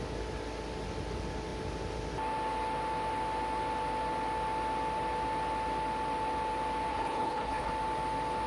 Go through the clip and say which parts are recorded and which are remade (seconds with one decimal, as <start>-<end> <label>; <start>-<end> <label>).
0.0-6.9 recorded; 6.9-7.7 remade; 7.7-8.5 recorded